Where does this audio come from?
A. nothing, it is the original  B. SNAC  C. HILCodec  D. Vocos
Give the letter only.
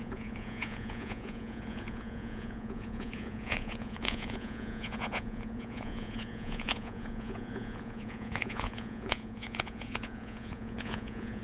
D